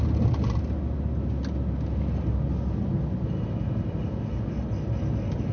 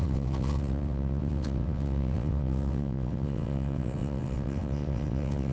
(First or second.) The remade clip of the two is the second